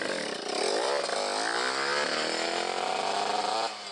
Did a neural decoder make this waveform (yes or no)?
no